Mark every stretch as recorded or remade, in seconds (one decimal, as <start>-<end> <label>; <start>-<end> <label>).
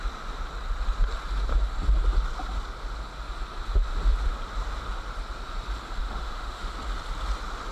0.0-6.0 recorded; 6.0-6.7 remade; 6.7-7.7 recorded